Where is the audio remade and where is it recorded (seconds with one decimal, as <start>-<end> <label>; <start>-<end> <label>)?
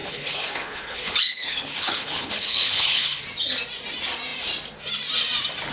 0.0-3.2 remade; 3.2-5.7 recorded